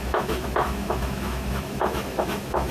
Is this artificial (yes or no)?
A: yes